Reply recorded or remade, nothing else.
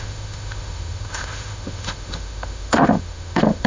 remade